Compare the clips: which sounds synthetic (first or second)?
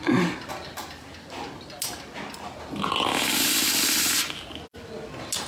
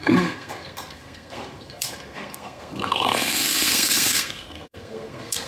second